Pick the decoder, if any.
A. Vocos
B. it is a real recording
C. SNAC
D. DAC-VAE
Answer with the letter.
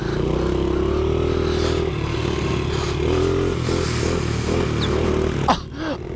B